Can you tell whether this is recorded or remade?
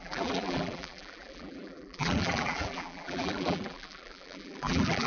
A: remade